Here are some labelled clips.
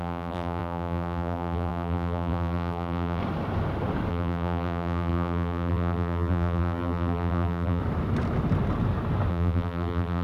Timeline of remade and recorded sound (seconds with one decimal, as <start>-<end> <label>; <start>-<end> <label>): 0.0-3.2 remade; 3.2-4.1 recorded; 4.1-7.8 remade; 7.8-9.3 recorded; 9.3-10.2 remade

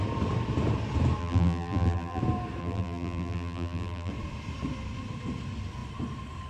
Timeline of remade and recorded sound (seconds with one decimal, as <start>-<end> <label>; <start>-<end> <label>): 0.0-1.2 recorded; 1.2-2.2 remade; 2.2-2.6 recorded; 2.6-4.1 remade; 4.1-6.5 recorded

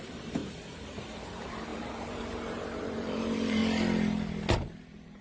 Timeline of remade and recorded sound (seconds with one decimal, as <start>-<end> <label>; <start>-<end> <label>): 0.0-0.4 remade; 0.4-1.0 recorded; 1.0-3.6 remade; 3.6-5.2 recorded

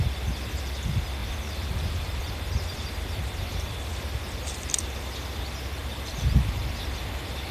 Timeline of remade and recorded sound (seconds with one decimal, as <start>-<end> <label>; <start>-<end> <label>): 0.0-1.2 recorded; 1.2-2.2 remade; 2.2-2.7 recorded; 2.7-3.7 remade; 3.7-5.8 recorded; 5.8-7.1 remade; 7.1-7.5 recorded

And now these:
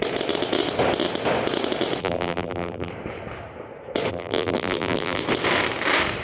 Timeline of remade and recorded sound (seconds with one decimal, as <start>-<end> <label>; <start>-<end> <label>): 0.0-2.0 recorded; 2.0-2.9 remade; 2.9-4.1 recorded; 4.1-5.2 remade; 5.2-6.2 recorded